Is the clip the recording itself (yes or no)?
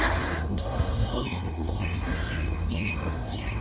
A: no